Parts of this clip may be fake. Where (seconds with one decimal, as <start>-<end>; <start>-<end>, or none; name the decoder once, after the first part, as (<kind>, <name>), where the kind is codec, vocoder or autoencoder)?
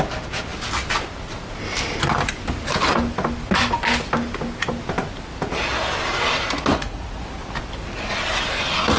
6.7-7.2 (vocoder, Vocos)